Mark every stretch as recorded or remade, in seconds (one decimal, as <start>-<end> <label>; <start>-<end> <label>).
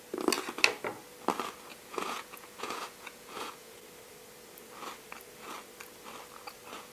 0.0-1.7 recorded; 1.7-3.8 remade; 3.8-6.9 recorded